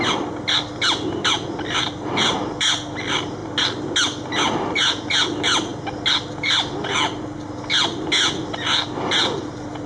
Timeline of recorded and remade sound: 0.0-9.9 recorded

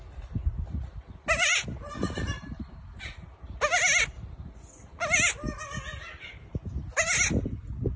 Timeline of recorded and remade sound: 0.0-8.0 recorded

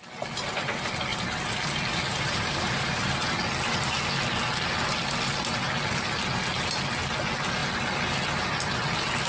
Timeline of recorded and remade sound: 0.0-2.1 recorded; 2.1-3.0 remade; 3.0-9.3 recorded

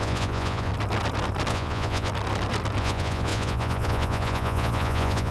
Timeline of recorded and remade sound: 0.0-0.7 remade; 0.7-1.5 recorded; 1.5-2.1 remade; 2.1-2.8 recorded; 2.8-5.3 remade

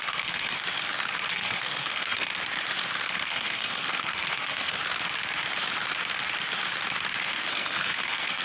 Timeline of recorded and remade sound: 0.0-0.6 remade; 0.6-1.3 recorded; 1.3-2.3 remade; 2.3-3.2 recorded; 3.2-4.8 remade; 4.8-7.5 recorded; 7.5-8.4 remade

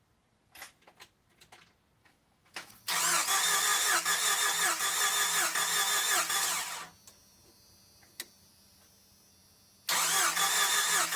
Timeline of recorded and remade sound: 0.0-2.0 recorded; 2.0-2.7 remade; 2.7-11.2 recorded

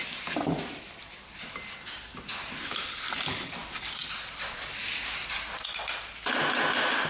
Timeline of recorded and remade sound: 0.0-7.1 recorded

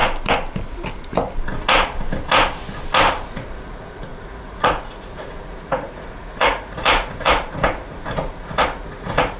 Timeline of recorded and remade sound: 0.0-3.3 recorded; 3.3-9.4 remade